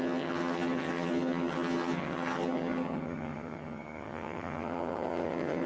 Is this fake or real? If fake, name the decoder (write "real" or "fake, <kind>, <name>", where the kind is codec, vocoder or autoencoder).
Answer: fake, vocoder, HiFi-GAN